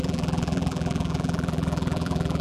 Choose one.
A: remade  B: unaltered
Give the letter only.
A